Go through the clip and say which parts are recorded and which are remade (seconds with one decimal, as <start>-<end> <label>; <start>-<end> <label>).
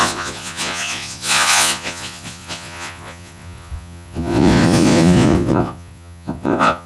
0.0-6.9 remade